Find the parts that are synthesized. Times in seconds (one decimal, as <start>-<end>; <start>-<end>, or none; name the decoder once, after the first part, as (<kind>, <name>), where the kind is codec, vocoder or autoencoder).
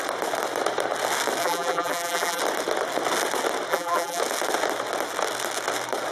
1.4-2.4 (vocoder, BigVGAN v2); 3.7-4.2